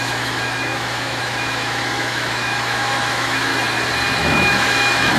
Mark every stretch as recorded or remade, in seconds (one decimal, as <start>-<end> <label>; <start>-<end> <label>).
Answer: 0.0-3.5 remade; 3.5-4.2 recorded; 4.2-5.2 remade